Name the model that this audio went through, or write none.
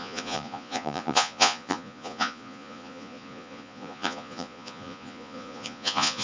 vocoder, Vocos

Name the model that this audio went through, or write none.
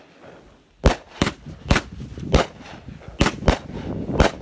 none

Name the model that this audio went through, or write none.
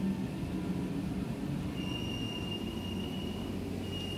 none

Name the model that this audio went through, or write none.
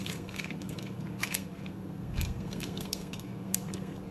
codec, SNAC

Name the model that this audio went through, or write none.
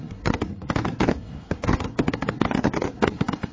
codec, SNAC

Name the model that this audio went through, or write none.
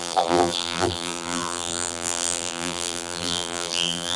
vocoder, BigVGAN v2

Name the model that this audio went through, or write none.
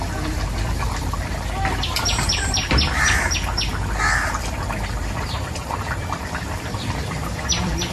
vocoder, BigVGAN v2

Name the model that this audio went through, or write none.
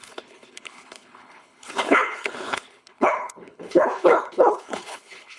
codec, HILCodec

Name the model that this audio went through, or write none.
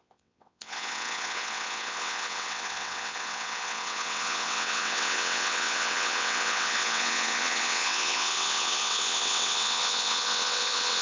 vocoder, WaveNeXt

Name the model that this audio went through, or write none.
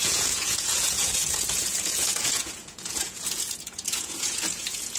vocoder, Vocos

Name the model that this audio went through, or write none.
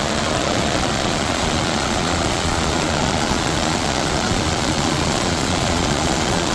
vocoder, Vocos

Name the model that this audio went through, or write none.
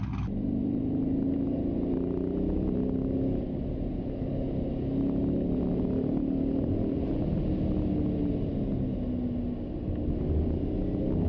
none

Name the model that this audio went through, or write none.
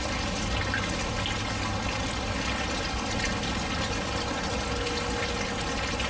none